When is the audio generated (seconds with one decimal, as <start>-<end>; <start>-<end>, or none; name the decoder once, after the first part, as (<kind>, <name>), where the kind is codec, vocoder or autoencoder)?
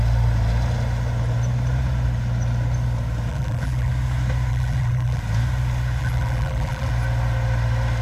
3.3-3.9 (vocoder, BigVGAN v2); 4.5-5.2; 6.0-6.9